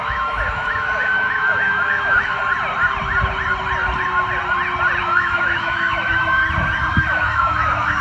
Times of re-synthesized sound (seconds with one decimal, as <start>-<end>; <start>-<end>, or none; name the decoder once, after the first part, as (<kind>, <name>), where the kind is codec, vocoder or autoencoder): 0.0-2.4 (autoencoder, DAC-VAE); 5.0-6.4; 6.9-8.0